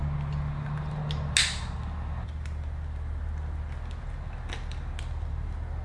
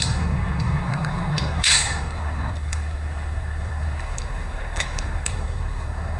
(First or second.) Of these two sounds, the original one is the first